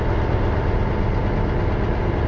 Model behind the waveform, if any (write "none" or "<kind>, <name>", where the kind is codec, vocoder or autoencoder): none